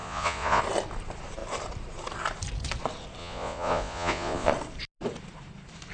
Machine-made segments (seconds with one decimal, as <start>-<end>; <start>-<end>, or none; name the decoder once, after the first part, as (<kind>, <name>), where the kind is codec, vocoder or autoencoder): 0.0-0.6 (vocoder, Vocos); 3.2-4.5